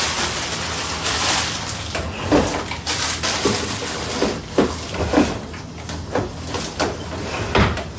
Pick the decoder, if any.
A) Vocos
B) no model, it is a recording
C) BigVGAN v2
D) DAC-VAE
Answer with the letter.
B